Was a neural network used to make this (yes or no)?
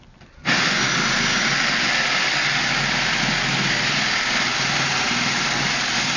no